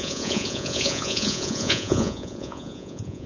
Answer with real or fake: fake